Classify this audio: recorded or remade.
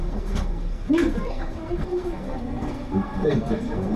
remade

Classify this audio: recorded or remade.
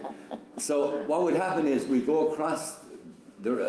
remade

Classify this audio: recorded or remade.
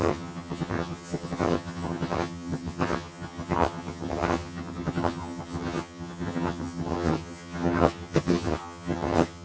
remade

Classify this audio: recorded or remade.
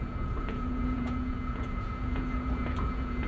remade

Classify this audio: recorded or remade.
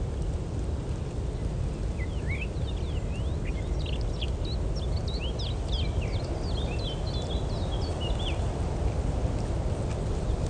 recorded